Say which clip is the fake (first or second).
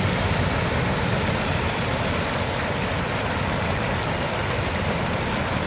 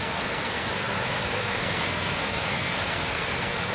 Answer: second